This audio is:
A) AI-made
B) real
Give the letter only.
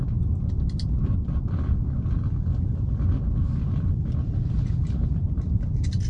B